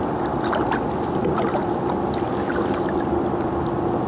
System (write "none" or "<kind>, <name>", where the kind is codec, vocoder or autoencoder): none